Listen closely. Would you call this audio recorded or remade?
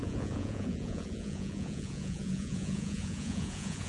remade